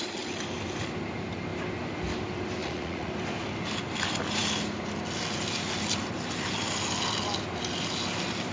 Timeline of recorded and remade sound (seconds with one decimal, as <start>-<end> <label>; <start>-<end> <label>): 0.0-2.6 recorded; 2.6-3.1 remade; 3.1-8.5 recorded